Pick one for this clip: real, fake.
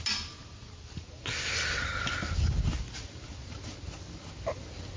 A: real